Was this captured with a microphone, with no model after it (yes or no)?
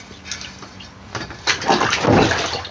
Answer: yes